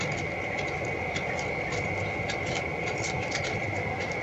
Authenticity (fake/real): real